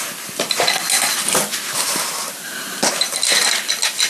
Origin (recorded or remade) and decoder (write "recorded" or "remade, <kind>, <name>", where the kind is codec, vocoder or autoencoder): recorded